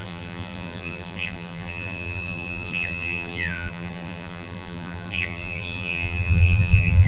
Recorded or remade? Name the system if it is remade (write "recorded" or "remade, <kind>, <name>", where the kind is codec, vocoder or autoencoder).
remade, vocoder, BigVGAN v2